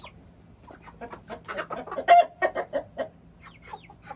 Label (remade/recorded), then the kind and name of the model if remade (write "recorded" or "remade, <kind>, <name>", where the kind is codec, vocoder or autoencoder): recorded